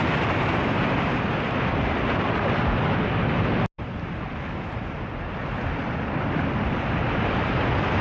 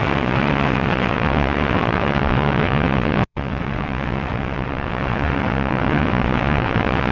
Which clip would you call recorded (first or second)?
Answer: first